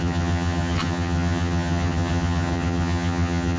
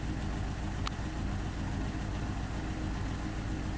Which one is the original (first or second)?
second